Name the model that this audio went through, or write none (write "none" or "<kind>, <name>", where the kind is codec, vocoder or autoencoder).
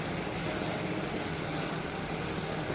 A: none